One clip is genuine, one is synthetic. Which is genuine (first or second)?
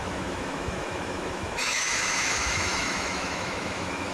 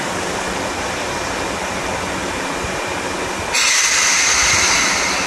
second